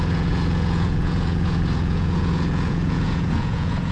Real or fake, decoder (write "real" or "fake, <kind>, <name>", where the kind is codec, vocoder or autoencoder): fake, vocoder, Vocos